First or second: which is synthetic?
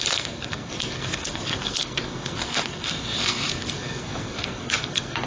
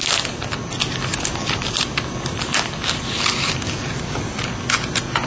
first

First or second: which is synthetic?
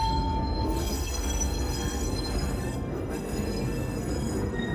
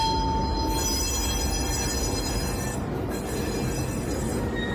first